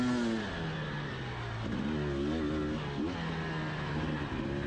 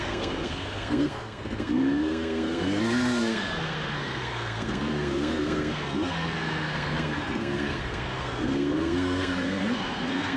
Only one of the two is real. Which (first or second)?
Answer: first